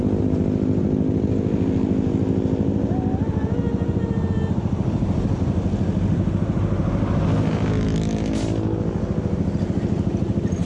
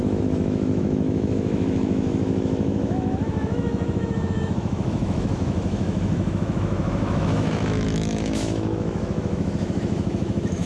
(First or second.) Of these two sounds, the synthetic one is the second